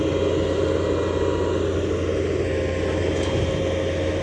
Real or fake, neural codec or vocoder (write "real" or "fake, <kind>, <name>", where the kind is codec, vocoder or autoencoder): real